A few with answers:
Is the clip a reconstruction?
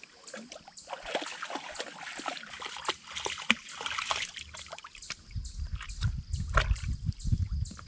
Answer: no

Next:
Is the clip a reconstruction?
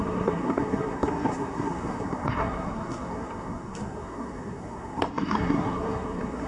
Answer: yes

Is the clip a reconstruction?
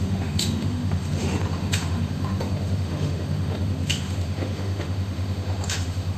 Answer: yes